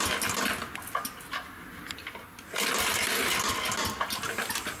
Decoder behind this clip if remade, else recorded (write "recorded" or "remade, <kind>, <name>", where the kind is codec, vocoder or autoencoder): recorded